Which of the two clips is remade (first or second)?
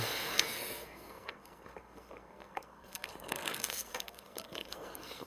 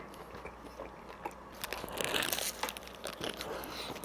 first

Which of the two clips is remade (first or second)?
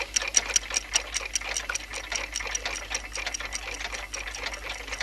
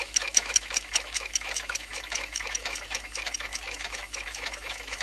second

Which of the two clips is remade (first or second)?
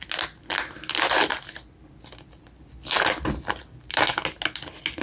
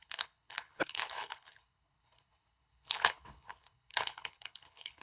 second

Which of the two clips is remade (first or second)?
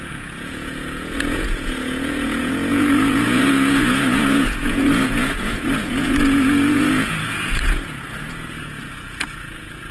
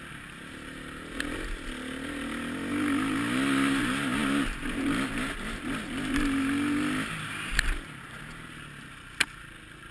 first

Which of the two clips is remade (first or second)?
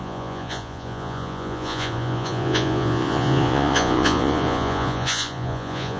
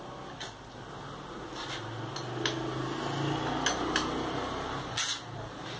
first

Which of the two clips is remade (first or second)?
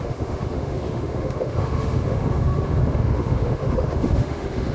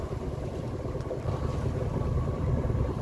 first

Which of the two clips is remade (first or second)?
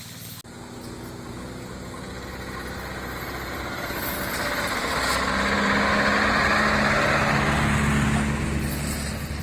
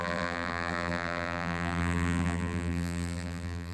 second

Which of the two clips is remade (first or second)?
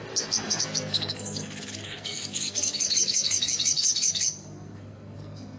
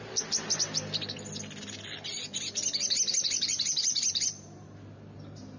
first